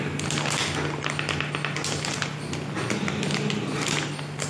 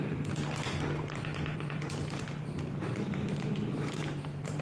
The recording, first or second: first